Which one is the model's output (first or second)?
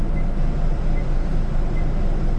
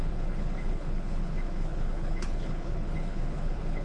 second